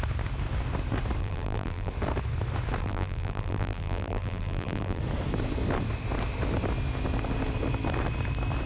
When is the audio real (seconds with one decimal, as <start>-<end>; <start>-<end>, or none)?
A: 0.0-1.2; 1.9-2.8; 5.0-8.7